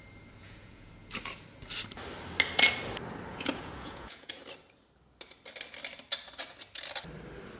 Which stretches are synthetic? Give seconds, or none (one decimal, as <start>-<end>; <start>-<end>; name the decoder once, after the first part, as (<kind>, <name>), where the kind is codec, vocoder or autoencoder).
0.4-0.9 (vocoder, Vocos); 3.3-4.4